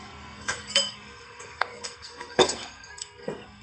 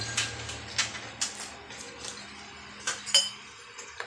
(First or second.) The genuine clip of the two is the second